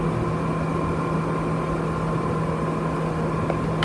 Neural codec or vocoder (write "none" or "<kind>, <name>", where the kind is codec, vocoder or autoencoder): none